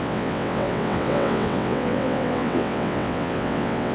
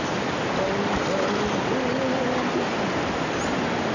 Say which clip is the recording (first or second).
second